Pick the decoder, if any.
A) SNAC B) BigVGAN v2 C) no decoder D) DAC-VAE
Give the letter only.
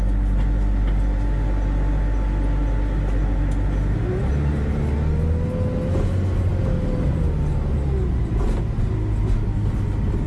C